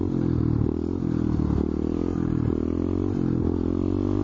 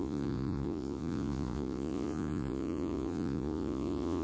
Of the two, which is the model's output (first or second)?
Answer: second